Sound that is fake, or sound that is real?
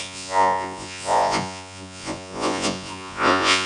fake